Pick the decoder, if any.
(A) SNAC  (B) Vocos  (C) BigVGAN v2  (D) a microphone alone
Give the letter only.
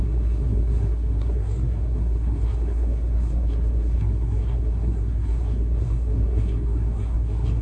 A